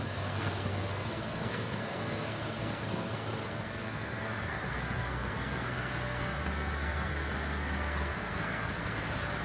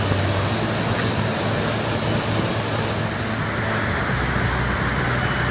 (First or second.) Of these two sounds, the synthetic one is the first